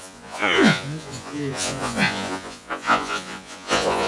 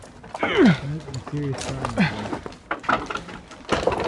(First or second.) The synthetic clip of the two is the first